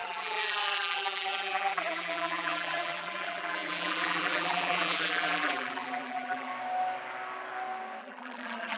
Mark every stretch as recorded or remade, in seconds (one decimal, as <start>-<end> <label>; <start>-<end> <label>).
0.0-6.5 remade; 6.5-8.0 recorded; 8.0-8.8 remade